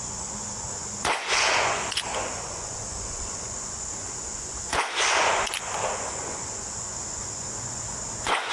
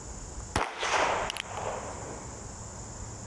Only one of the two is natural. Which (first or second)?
second